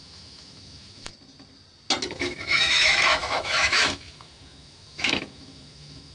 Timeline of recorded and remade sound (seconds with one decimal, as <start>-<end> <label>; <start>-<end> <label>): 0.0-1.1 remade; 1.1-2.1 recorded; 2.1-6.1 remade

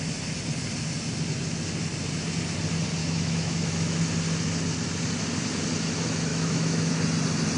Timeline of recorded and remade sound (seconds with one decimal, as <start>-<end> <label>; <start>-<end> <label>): 0.0-3.0 recorded; 3.0-4.0 remade; 4.0-6.3 recorded; 6.3-6.9 remade; 6.9-7.6 recorded

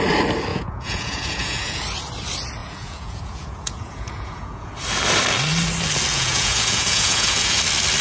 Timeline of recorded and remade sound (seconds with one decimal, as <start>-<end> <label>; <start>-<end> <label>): 0.0-0.5 recorded; 0.5-1.8 remade; 1.8-2.6 recorded; 2.6-4.7 remade; 4.7-6.1 recorded; 6.1-7.6 remade; 7.6-8.0 recorded

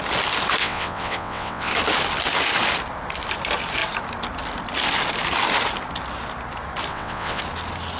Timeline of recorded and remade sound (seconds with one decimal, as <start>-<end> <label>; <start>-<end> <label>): 0.0-0.6 recorded; 0.6-1.7 remade; 1.7-6.9 recorded; 6.9-7.4 remade; 7.4-8.0 recorded